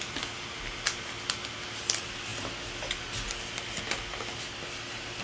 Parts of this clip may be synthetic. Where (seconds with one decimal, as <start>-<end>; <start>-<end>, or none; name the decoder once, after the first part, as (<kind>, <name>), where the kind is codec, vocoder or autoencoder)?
none